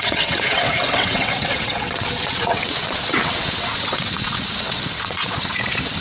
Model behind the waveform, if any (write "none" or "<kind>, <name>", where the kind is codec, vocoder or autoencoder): vocoder, WaveNeXt